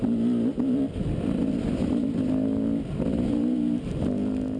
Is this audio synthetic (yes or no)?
no